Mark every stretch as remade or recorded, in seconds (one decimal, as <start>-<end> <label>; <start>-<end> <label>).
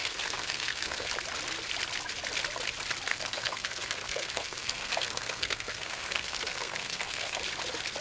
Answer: 0.0-1.1 remade; 1.1-3.1 recorded; 3.1-7.4 remade; 7.4-8.0 recorded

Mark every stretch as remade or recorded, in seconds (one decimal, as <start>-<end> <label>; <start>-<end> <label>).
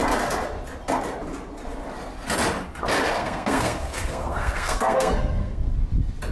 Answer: 0.0-3.2 recorded; 3.2-5.7 remade; 5.7-6.3 recorded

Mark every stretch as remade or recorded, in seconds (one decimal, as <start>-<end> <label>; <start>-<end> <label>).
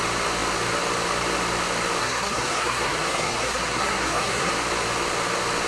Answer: 0.0-2.0 recorded; 2.0-4.5 remade; 4.5-5.7 recorded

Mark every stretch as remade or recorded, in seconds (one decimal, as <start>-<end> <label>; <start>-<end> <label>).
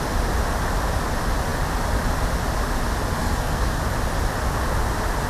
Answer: 0.0-3.2 recorded; 3.2-3.8 remade; 3.8-5.3 recorded